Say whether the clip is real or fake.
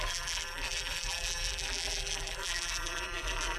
fake